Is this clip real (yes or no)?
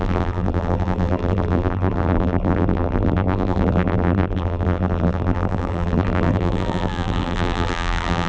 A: no